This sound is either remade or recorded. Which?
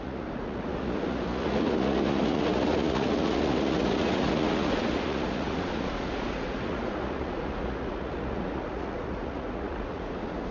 remade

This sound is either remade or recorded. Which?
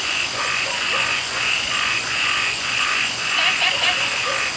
remade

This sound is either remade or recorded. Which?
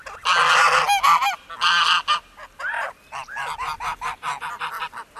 recorded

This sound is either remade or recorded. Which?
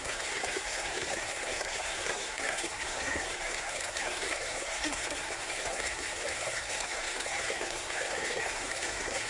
remade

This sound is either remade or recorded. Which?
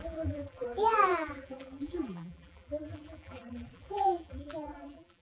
remade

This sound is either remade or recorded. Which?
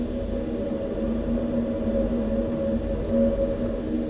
recorded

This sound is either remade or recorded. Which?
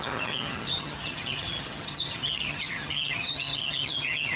remade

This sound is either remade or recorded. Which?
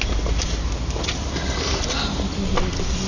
recorded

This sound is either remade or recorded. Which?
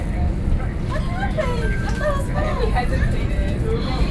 remade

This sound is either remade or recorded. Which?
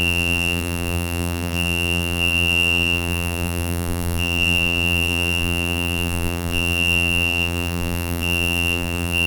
remade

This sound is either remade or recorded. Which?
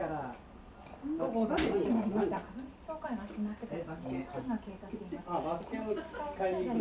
recorded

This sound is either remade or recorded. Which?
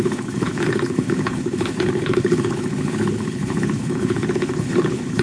remade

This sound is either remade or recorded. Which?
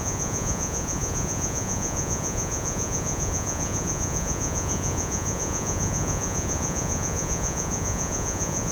remade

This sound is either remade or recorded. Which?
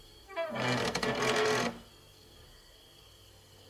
remade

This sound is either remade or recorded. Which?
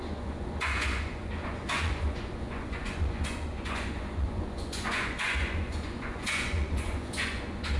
remade